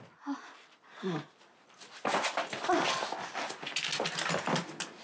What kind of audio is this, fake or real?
real